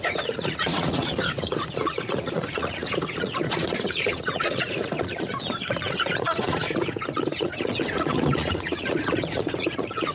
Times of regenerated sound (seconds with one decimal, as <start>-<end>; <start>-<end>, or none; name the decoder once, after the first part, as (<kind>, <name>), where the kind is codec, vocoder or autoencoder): 0.0-10.1 (vocoder, Vocos)